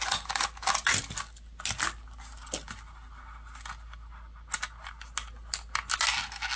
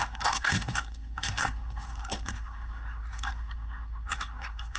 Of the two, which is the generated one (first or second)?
second